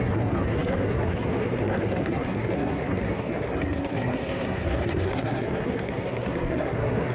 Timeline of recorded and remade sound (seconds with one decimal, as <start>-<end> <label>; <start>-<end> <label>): 0.0-7.1 remade